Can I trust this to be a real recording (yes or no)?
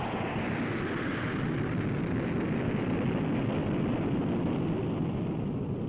yes